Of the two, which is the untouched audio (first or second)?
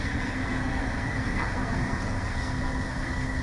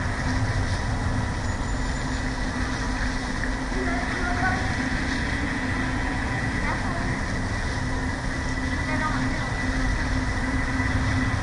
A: second